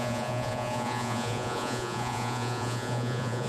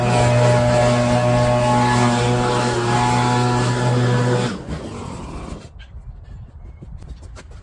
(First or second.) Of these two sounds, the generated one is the first